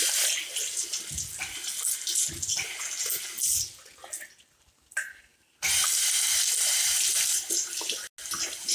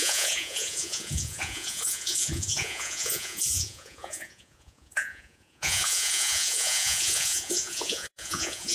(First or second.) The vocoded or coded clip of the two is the second